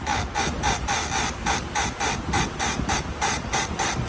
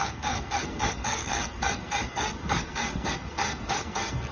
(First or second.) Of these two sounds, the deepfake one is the second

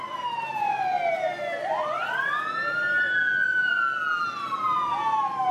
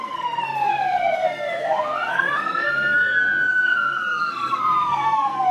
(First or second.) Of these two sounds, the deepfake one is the second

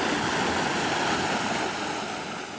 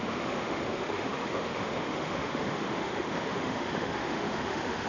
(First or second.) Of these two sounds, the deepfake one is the second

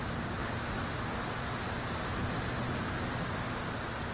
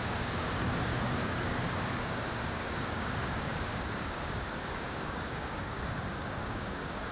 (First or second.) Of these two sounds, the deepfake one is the second